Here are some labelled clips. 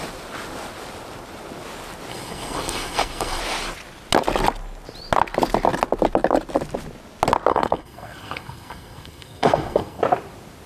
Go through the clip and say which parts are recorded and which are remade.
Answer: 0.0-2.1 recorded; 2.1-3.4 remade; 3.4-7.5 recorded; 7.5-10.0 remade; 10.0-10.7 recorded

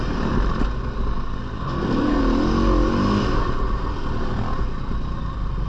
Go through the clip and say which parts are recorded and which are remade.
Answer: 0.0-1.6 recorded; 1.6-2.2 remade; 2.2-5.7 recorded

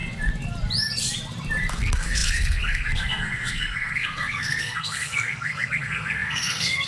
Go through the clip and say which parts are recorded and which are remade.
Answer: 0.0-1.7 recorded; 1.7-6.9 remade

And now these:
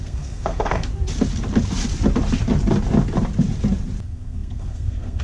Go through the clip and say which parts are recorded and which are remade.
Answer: 0.0-0.9 remade; 0.9-4.0 recorded; 4.0-5.2 remade

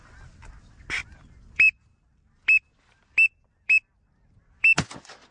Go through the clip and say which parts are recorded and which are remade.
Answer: 0.0-5.3 recorded

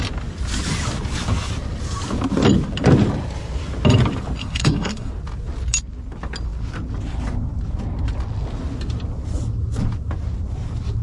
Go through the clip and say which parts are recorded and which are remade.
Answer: 0.0-4.4 recorded; 4.4-5.1 remade; 5.1-11.0 recorded

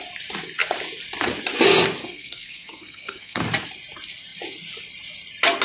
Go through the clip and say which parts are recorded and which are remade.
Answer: 0.0-2.0 recorded; 2.0-3.4 remade; 3.4-5.6 recorded